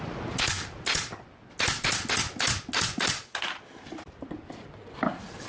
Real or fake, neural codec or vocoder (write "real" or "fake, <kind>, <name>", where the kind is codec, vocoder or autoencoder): real